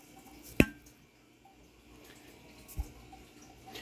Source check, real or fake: real